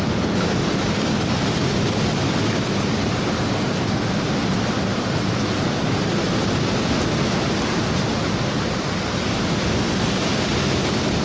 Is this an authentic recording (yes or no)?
yes